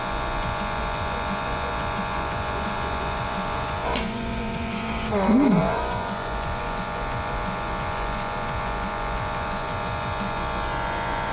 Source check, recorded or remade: remade